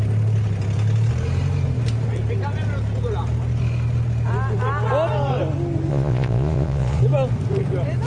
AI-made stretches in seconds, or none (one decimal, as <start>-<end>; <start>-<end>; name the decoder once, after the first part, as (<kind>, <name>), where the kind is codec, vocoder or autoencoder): 5.9-7.0 (vocoder, Vocos)